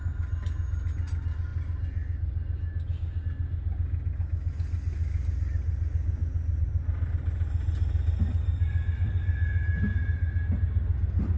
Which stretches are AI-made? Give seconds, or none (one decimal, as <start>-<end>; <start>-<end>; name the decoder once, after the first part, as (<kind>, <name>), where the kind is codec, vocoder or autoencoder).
none